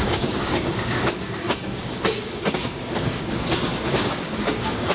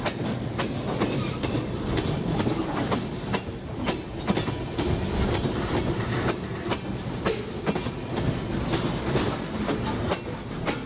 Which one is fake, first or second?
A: first